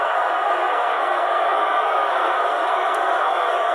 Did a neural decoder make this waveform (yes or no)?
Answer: yes